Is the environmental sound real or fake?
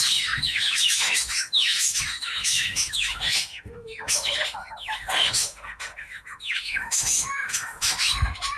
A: fake